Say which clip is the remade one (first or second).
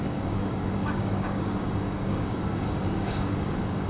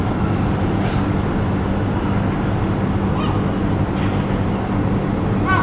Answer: first